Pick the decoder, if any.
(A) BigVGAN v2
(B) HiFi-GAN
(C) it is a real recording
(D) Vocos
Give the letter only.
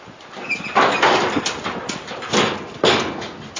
C